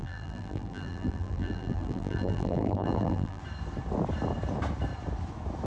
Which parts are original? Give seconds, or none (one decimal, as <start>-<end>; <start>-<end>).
3.4-5.7